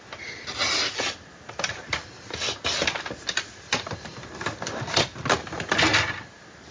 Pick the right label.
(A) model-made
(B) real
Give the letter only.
B